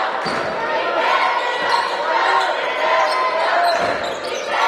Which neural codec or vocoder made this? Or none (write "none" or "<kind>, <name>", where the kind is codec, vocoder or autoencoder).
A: none